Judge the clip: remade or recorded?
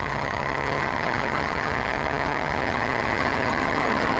remade